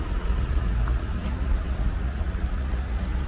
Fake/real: fake